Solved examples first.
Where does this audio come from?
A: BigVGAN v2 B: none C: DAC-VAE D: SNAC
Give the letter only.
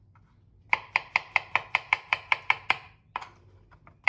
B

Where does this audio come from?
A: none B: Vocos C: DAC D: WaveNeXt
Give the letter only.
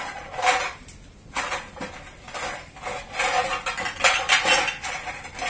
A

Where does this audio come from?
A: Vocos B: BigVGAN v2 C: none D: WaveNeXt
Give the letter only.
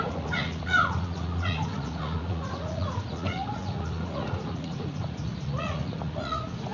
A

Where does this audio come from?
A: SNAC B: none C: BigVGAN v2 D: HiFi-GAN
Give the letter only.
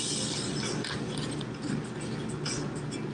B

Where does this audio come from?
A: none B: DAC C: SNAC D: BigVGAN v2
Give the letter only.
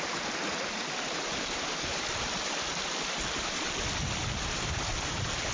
D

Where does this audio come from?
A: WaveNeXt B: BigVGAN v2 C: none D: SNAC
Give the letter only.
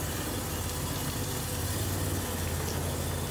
C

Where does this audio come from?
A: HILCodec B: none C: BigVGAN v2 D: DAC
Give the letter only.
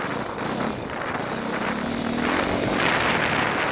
B